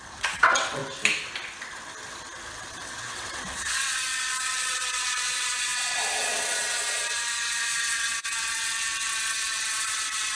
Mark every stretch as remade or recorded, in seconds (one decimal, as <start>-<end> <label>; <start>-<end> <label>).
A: 0.0-0.8 remade; 0.8-2.6 recorded; 2.6-10.4 remade